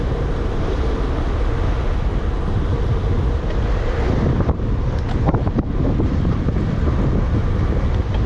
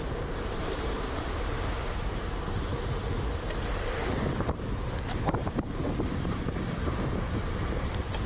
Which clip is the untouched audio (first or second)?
first